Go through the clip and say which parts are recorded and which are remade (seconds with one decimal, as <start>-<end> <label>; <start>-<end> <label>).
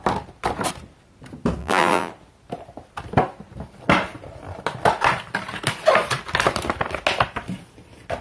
0.0-1.6 recorded; 1.6-2.1 remade; 2.1-8.2 recorded